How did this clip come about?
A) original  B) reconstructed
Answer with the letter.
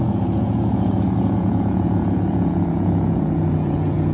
B